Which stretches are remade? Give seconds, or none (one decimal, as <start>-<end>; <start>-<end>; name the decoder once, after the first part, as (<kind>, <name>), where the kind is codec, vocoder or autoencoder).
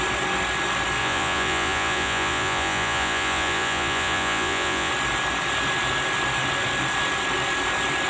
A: 1.0-4.9 (vocoder, Vocos)